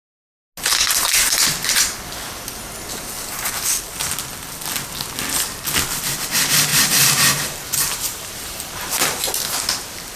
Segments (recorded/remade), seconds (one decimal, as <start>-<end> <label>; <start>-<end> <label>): 0.0-6.7 recorded; 6.7-9.3 remade; 9.3-10.2 recorded